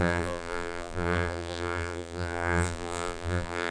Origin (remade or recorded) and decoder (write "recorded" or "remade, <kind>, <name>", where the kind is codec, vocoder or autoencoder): remade, vocoder, BigVGAN v2